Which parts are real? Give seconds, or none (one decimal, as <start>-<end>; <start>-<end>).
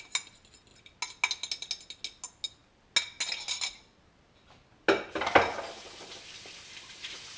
0.0-7.4